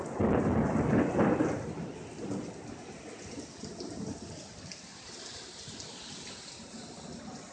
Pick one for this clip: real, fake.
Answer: real